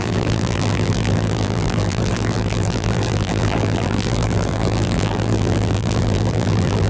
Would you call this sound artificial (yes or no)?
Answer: yes